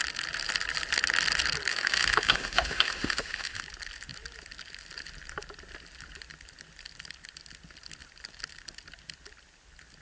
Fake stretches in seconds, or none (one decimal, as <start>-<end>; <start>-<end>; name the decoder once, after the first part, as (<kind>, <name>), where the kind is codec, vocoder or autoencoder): 1.7-3.6 (autoencoder, DAC-VAE)